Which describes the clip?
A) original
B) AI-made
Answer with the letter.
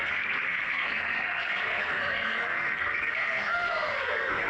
B